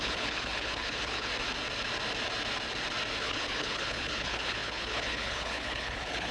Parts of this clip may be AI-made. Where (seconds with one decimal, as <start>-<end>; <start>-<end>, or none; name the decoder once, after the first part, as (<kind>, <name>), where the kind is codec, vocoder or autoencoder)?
0.0-1.3 (codec, HILCodec); 3.2-6.3